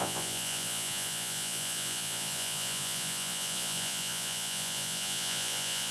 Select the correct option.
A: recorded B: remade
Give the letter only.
B